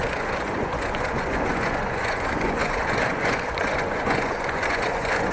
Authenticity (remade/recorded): remade